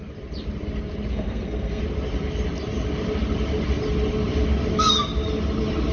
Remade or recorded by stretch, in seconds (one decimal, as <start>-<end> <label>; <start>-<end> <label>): 0.0-1.1 recorded; 1.1-1.8 remade; 1.8-5.9 recorded